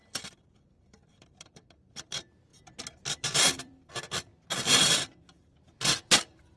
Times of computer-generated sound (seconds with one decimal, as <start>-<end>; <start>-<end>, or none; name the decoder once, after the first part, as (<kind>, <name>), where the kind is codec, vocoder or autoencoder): 0.8-2.5 (vocoder, BigVGAN v2); 3.1-4.3; 5.4-6.6